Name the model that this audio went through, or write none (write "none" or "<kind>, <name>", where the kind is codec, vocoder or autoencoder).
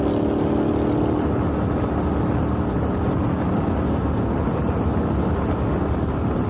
none